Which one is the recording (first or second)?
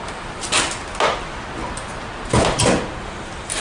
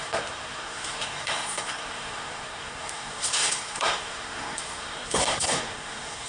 first